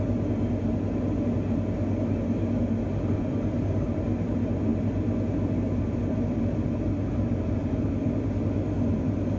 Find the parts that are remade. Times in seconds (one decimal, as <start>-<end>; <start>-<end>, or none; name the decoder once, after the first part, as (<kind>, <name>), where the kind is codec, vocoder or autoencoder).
none